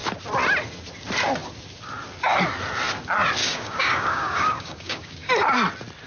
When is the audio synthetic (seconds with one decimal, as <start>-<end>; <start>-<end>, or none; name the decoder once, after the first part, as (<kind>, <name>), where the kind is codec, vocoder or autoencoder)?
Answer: 3.4-5.3 (codec, DAC)